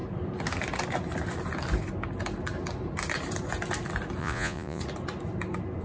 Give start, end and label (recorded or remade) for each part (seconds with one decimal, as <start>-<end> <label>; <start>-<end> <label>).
0.0-4.2 recorded; 4.2-4.8 remade; 4.8-5.8 recorded